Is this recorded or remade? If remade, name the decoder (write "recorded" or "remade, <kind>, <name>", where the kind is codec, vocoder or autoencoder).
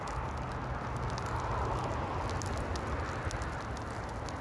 recorded